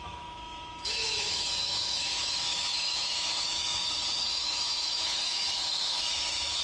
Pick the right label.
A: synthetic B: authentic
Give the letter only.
A